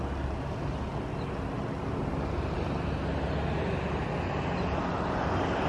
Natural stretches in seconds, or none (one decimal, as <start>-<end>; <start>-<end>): 0.0-5.7